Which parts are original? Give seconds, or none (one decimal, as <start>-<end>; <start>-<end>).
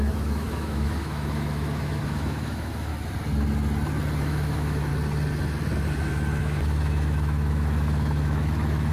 2.9-4.2; 4.9-6.4